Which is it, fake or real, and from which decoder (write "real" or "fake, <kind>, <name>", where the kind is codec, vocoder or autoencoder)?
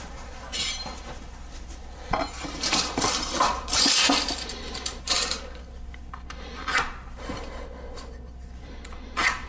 real